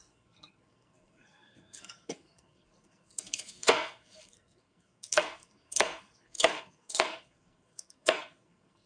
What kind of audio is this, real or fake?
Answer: fake